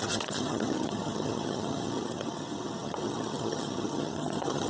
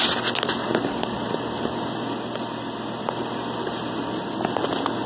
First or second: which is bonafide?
second